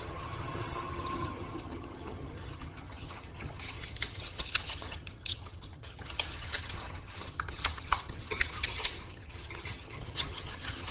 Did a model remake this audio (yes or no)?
yes